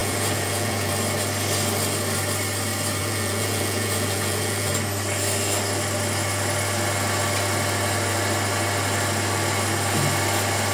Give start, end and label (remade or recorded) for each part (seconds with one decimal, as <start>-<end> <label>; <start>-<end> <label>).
0.0-0.9 remade; 0.9-3.0 recorded; 3.0-4.7 remade; 4.7-10.7 recorded